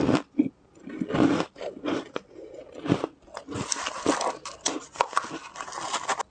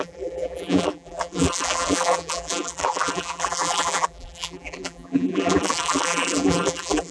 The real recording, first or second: first